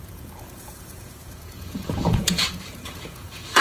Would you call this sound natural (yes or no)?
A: no